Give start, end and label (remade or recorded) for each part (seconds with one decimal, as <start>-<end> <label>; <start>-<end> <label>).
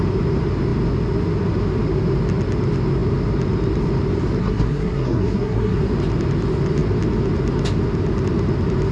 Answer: 0.0-4.4 recorded; 4.4-5.8 remade; 5.8-8.9 recorded